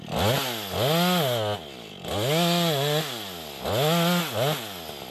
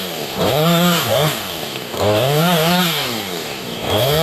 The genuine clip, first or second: first